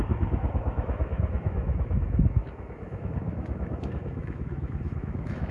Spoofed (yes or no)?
yes